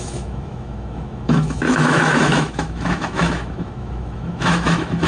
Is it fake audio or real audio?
fake